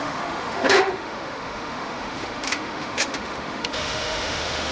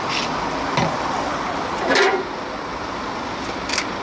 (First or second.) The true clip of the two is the second